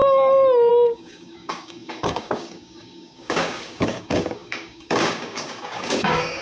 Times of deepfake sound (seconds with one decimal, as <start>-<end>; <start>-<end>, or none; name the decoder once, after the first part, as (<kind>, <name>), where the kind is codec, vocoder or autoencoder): 0.7-6.4 (codec, DAC)